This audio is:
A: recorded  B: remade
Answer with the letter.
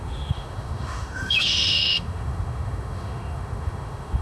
B